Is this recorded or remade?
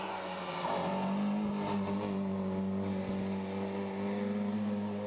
recorded